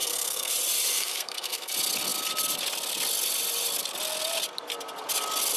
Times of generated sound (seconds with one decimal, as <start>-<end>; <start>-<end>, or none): 0.0-0.5; 0.9-1.7